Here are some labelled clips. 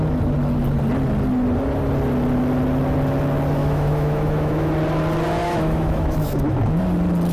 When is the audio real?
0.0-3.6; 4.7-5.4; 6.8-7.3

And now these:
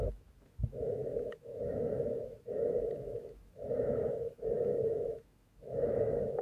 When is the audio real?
none

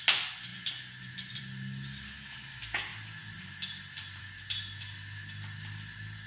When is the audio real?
0.0-6.3

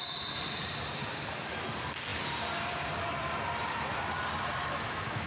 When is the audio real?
0.0-4.6

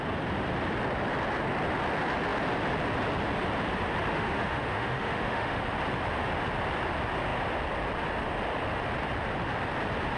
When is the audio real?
0.0-4.1; 5.6-10.2

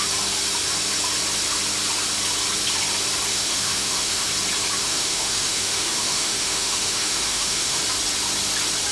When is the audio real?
0.0-3.3; 4.3-4.8; 7.8-8.9

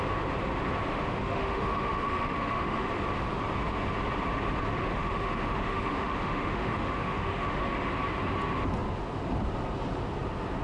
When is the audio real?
0.0-0.9; 2.9-4.7; 7.9-10.6

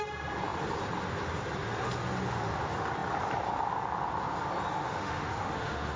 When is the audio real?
0.0-4.8